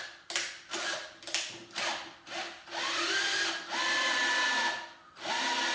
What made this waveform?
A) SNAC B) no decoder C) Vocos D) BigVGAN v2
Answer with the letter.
B